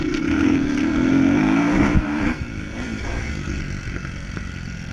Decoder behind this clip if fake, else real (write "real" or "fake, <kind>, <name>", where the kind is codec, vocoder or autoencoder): fake, codec, SNAC